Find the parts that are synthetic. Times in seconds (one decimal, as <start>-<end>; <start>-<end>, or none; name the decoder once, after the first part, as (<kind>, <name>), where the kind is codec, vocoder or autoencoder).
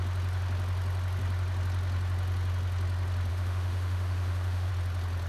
3.3-4.7 (autoencoder, DAC-VAE)